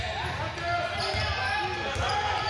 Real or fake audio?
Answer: real